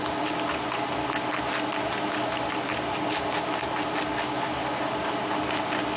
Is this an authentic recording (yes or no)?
yes